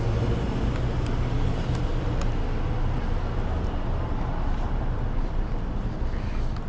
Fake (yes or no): no